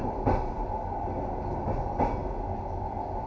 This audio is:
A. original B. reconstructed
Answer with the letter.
A